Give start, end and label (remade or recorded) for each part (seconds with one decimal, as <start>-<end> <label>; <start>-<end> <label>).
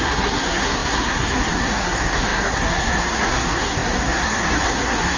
0.0-5.2 remade